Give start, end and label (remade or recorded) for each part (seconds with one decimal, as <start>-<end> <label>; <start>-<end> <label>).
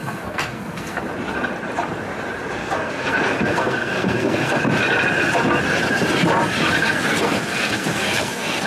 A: 0.0-1.0 remade; 1.0-2.6 recorded; 2.6-4.6 remade; 4.6-6.8 recorded; 6.8-8.7 remade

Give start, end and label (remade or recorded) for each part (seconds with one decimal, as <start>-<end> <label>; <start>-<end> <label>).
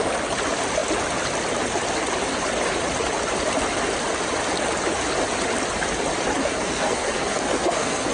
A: 0.0-6.4 recorded; 6.4-8.1 remade